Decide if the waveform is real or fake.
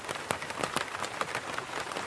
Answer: real